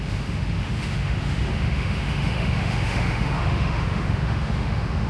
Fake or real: fake